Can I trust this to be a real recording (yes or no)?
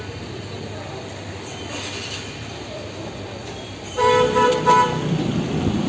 no